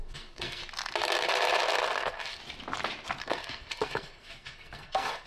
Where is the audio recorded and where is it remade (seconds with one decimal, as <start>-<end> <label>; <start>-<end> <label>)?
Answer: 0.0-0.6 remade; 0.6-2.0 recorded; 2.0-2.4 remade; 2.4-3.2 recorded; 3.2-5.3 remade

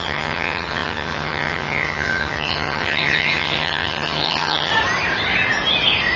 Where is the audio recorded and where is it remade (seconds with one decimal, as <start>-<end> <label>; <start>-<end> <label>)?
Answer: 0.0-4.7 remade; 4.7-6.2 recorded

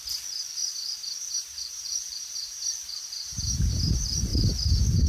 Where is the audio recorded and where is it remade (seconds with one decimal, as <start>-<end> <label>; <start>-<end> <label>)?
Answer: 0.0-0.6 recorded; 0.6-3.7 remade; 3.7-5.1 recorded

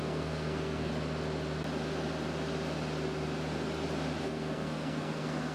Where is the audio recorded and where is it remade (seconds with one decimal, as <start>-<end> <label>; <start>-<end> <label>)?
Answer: 0.0-0.9 remade; 0.9-4.2 recorded; 4.2-5.5 remade

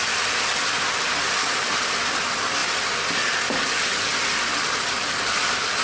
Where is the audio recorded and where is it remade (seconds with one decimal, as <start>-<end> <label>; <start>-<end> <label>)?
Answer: 0.0-2.6 remade; 2.6-3.2 recorded; 3.2-4.1 remade; 4.1-4.6 recorded; 4.6-5.8 remade

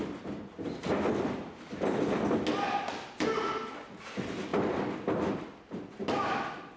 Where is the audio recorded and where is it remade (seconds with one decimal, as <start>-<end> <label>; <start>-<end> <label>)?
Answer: 0.0-6.8 recorded